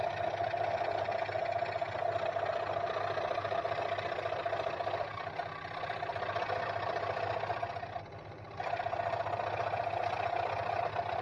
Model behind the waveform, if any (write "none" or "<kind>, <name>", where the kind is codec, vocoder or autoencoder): none